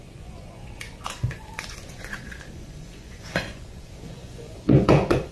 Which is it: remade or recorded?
remade